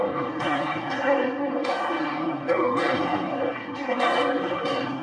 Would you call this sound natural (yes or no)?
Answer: no